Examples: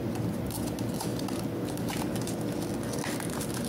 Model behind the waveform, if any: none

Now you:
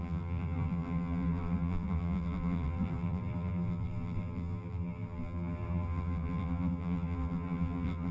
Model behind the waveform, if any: vocoder, BigVGAN v2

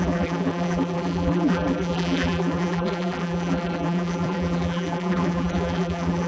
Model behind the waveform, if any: vocoder, BigVGAN v2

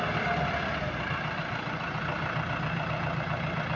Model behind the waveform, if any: none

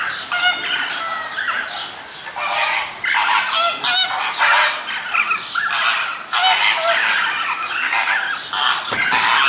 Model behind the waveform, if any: none